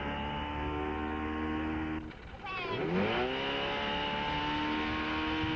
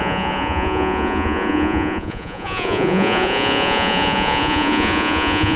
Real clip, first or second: first